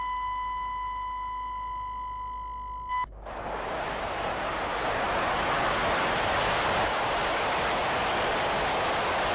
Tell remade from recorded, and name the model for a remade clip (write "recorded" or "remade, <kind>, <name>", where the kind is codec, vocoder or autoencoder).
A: recorded